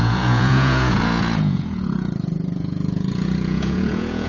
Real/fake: fake